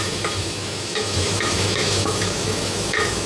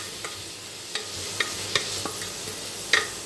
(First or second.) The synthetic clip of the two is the first